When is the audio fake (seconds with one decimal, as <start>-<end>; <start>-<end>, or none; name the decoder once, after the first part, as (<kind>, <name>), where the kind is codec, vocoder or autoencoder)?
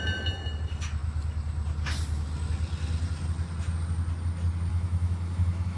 4.7-5.8 (autoencoder, DAC-VAE)